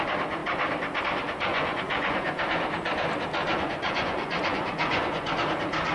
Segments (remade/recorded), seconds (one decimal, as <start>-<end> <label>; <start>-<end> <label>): 0.0-1.5 recorded; 1.5-2.4 remade; 2.4-3.4 recorded; 3.4-5.3 remade; 5.3-5.9 recorded